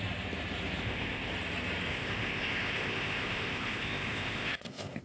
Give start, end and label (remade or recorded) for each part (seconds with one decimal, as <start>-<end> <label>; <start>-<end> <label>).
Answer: 0.0-0.8 recorded; 0.8-1.3 remade; 1.3-1.9 recorded; 1.9-5.0 remade